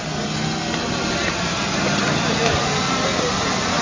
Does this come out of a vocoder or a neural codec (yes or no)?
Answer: no